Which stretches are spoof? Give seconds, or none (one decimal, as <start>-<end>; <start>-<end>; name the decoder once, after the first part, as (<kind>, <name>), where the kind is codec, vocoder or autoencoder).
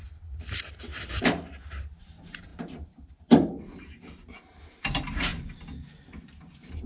0.7-5.3 (vocoder, BigVGAN v2); 6.0-6.9